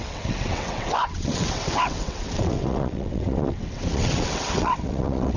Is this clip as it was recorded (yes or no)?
no